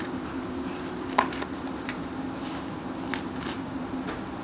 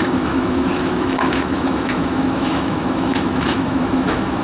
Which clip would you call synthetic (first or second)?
second